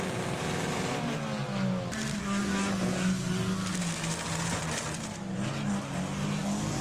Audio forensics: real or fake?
real